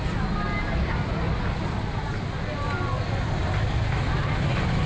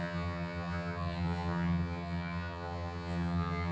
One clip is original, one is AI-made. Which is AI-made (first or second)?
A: second